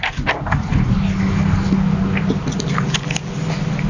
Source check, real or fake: real